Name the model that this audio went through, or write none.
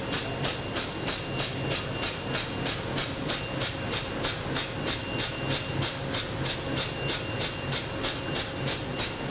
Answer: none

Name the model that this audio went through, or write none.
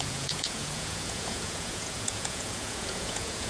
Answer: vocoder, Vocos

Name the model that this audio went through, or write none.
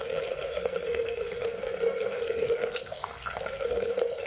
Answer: codec, SNAC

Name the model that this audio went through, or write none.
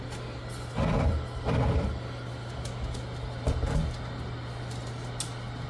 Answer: none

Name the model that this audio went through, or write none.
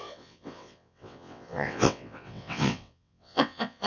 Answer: vocoder, WaveNeXt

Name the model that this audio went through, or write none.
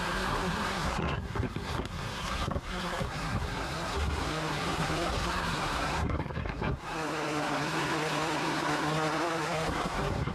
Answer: codec, SNAC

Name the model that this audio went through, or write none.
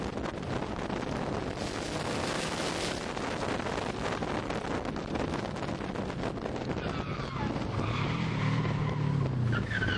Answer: none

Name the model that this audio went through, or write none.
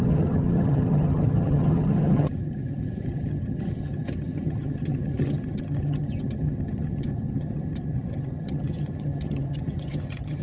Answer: vocoder, HiFi-GAN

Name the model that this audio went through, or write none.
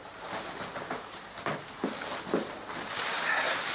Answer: none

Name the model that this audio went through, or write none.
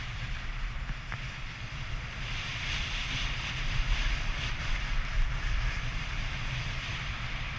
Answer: vocoder, BigVGAN v2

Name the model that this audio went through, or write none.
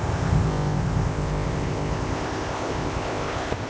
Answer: codec, ZipCodec